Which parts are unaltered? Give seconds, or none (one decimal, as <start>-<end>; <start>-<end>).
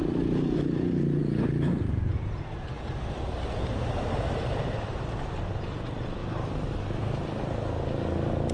0.0-1.2; 5.4-8.5